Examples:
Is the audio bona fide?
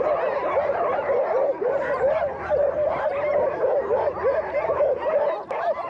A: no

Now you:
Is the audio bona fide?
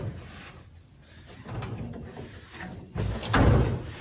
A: yes